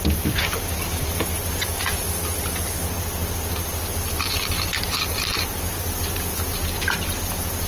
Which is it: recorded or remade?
recorded